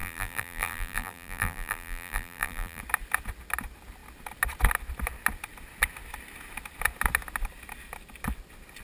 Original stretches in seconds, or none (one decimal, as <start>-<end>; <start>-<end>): 2.8-8.8